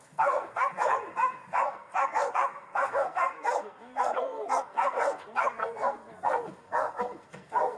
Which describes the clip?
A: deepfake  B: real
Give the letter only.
A